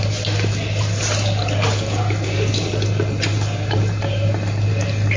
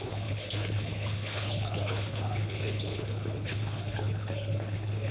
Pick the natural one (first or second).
first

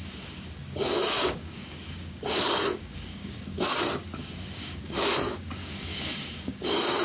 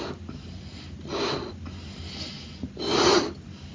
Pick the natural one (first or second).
second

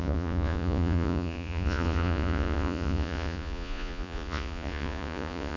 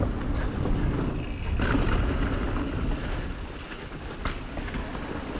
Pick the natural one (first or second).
second